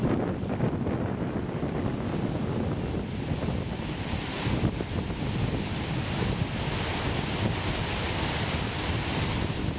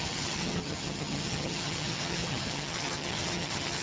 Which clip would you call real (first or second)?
first